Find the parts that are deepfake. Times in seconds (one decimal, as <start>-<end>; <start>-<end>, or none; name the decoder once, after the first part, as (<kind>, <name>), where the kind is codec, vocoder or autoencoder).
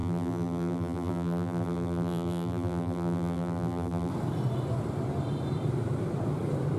0.0-4.1 (vocoder, BigVGAN v2)